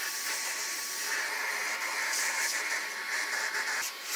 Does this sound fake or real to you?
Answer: real